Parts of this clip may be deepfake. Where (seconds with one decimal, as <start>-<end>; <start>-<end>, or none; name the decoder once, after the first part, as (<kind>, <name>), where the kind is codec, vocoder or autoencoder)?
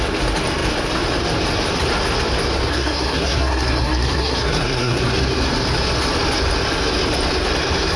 2.7-5.0 (codec, SNAC)